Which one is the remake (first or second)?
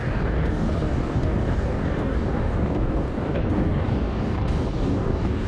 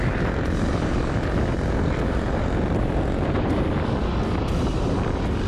first